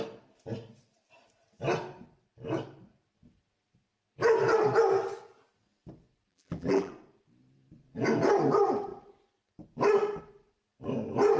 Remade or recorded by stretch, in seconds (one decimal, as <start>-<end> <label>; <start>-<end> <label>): 0.0-6.3 recorded; 6.3-6.9 remade; 6.9-11.4 recorded